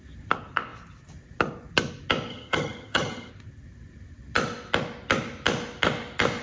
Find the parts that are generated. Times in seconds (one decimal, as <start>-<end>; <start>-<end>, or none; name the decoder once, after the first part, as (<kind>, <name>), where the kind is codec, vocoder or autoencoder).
2.3-3.3 (vocoder, HiFi-GAN)